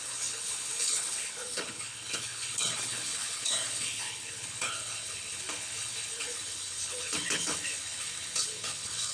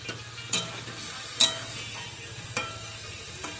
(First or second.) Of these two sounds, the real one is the second